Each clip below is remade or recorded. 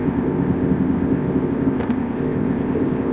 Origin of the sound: remade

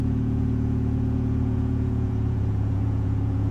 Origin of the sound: remade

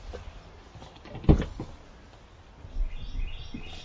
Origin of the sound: recorded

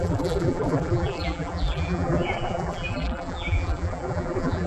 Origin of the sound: remade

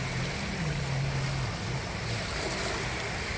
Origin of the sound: recorded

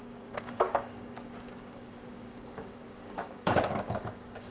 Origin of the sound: remade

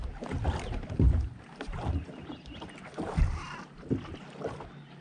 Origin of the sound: recorded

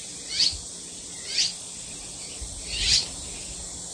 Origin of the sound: recorded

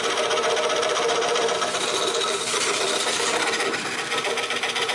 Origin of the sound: remade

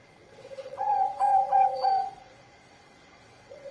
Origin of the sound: remade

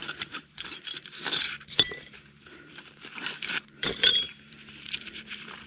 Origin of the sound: remade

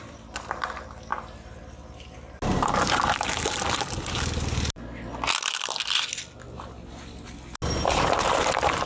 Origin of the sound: recorded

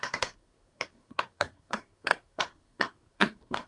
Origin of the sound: remade